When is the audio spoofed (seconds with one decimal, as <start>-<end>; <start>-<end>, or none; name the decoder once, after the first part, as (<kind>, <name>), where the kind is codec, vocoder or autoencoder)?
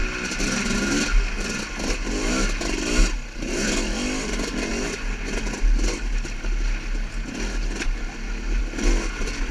none